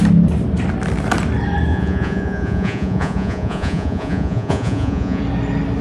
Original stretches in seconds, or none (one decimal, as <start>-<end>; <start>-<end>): 0.0-1.7; 5.2-5.8